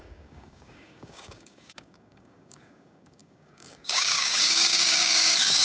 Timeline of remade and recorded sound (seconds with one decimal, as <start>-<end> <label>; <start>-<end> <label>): 0.0-5.6 remade

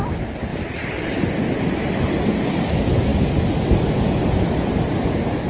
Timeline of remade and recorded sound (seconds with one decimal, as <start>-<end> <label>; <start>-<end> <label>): 0.0-5.5 recorded

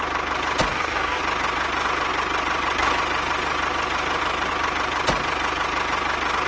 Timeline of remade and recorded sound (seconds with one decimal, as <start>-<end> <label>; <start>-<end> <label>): 0.0-0.7 recorded; 0.7-1.2 remade; 1.2-6.5 recorded

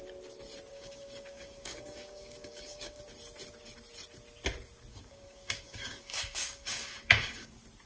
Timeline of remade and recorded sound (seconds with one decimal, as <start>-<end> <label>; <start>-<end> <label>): 0.0-0.7 recorded; 0.7-3.0 remade; 3.0-4.9 recorded; 4.9-7.5 remade; 7.5-7.9 recorded

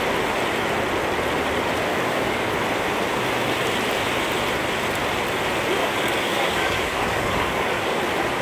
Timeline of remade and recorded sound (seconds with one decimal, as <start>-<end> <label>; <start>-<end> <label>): 0.0-1.9 recorded; 1.9-2.5 remade; 2.5-5.8 recorded; 5.8-8.0 remade; 8.0-8.4 recorded

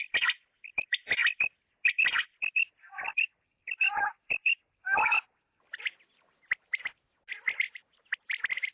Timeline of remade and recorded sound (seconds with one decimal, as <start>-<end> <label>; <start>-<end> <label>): 0.0-8.7 recorded

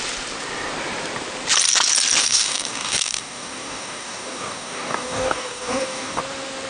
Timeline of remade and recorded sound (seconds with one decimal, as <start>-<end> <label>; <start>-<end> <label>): 0.0-2.2 recorded; 2.2-6.2 remade; 6.2-6.7 recorded

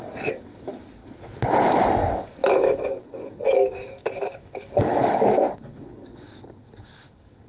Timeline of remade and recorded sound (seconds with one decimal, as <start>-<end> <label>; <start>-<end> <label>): 0.0-1.0 remade; 1.0-1.9 recorded; 1.9-7.5 remade